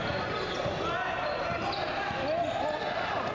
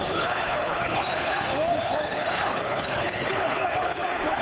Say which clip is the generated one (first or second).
second